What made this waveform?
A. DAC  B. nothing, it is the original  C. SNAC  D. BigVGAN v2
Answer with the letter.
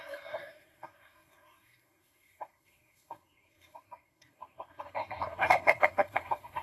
C